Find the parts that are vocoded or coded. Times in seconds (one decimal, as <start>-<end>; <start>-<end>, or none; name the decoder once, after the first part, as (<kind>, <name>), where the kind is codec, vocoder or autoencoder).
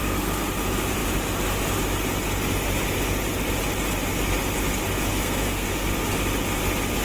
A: 0.0-0.5 (codec, SNAC); 5.1-5.7